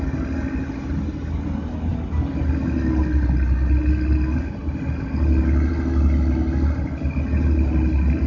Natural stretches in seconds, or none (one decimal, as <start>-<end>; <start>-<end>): 0.0-8.3